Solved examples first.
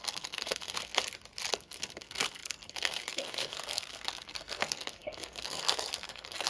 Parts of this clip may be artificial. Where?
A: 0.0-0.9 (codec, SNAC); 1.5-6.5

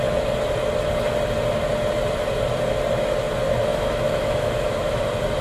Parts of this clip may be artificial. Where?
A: 3.7-5.0 (autoencoder, DAC-VAE)

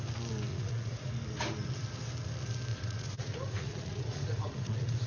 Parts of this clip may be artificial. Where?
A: 0.5-1.1 (vocoder, Vocos); 2.7-5.1

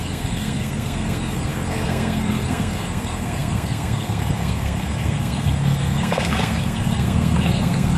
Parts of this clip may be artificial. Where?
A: 0.0-8.0 (codec, SNAC)